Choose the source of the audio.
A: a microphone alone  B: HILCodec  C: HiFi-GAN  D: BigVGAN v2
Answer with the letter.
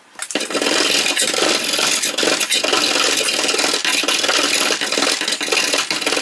A